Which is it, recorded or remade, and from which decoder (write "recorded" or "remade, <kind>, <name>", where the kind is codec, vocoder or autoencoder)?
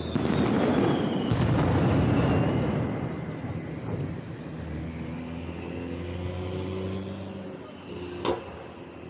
recorded